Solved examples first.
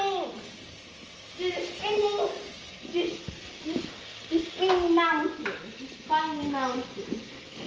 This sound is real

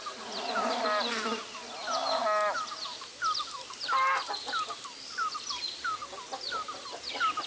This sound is real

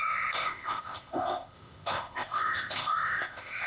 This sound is fake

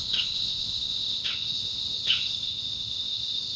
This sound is fake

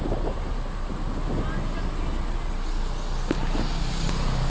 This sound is real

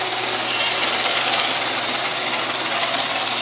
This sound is real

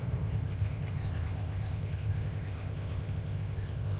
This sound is fake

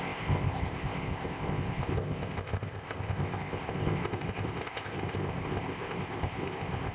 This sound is fake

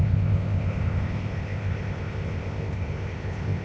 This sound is fake